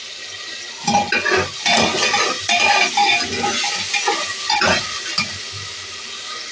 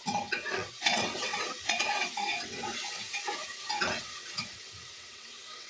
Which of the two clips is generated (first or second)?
second